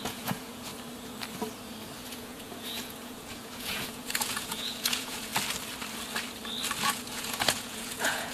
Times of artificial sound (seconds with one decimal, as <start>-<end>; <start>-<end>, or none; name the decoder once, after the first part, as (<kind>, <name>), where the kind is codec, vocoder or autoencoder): 0.0-0.7 (vocoder, Vocos); 2.1-5.3; 6.8-8.3

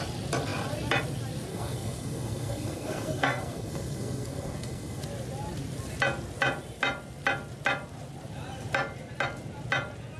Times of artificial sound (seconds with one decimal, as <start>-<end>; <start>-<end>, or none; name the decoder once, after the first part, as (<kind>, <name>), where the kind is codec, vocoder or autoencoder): 1.5-5.0 (codec, SNAC)